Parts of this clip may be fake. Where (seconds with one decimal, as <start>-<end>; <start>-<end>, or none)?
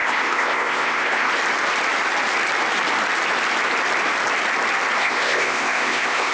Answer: 0.0-1.3; 5.0-6.3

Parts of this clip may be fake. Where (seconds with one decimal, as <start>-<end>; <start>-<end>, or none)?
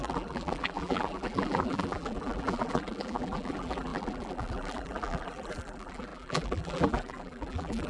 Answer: 0.0-7.9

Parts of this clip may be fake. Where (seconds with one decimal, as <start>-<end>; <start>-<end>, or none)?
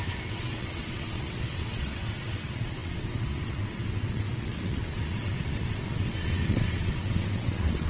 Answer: 0.0-7.9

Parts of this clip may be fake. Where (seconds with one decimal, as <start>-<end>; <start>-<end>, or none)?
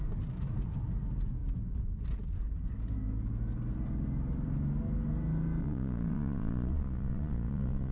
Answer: 5.6-7.9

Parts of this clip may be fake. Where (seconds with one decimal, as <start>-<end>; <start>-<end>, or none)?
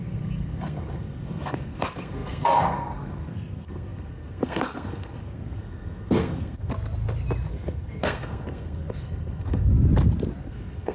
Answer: 0.0-6.7; 7.5-9.7; 10.4-10.9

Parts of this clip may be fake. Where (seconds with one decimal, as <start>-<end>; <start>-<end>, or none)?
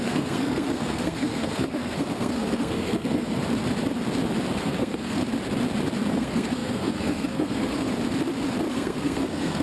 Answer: 0.0-3.4; 4.6-5.2; 6.1-7.9; 8.7-9.6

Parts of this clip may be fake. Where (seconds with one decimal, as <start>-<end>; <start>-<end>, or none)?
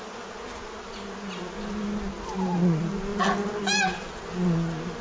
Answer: none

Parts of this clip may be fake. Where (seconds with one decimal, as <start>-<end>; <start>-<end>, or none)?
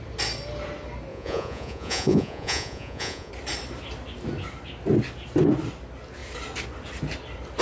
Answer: 1.1-3.3